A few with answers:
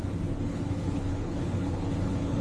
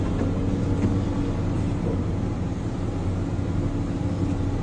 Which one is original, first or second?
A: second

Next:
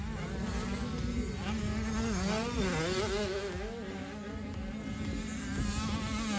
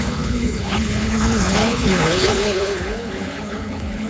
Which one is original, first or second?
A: first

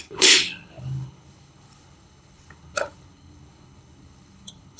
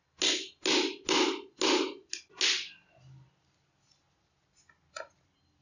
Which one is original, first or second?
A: second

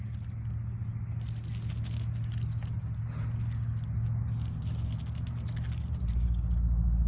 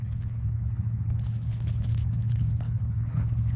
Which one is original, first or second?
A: first